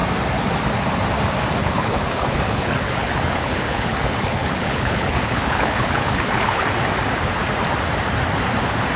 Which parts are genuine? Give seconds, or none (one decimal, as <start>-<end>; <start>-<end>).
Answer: 0.0-1.6; 6.7-9.0